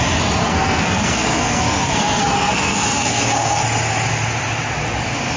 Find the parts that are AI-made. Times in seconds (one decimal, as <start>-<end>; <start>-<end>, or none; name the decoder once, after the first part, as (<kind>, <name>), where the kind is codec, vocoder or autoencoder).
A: 0.4-3.6 (codec, SNAC)